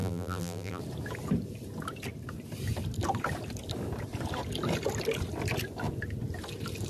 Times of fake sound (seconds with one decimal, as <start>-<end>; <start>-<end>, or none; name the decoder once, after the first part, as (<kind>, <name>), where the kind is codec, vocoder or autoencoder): 0.0-0.8 (vocoder, BigVGAN v2)